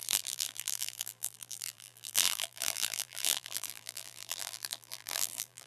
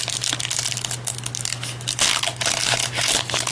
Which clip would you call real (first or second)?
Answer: second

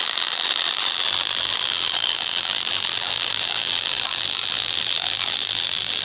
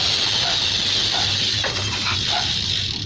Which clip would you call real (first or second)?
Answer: second